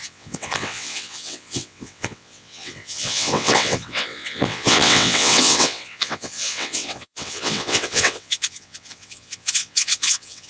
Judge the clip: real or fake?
fake